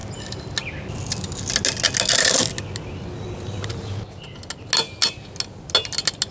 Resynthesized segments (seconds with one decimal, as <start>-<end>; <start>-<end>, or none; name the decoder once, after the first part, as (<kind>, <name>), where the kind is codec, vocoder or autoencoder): none